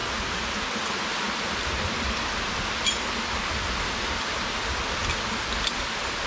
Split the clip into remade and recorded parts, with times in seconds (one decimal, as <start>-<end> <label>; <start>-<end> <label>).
0.0-6.3 recorded